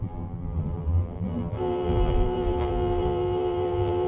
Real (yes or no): no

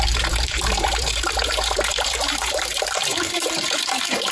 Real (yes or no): no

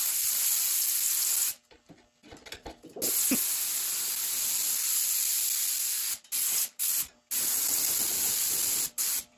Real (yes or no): yes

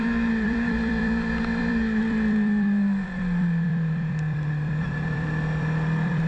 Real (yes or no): no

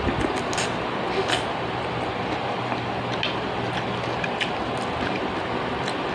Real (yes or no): yes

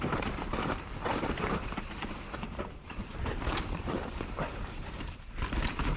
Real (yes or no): no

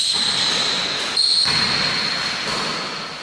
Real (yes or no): yes